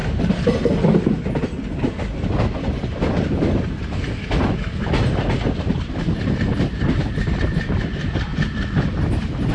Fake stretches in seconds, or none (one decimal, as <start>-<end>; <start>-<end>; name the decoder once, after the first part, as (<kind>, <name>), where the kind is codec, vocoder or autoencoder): 8.3-9.5 (vocoder, BigVGAN v2)